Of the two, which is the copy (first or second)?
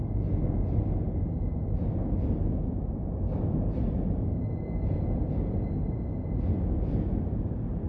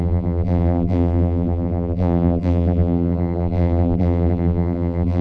second